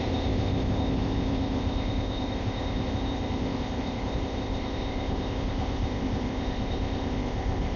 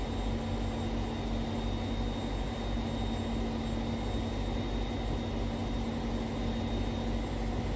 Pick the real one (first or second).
second